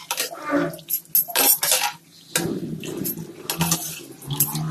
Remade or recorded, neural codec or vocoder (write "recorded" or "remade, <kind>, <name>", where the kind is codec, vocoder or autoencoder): recorded